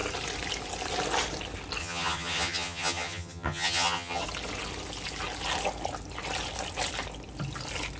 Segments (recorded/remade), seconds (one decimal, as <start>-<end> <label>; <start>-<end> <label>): 0.0-1.8 recorded; 1.8-4.2 remade; 4.2-8.0 recorded